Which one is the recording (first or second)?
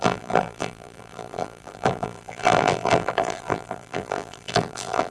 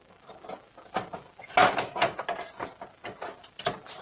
second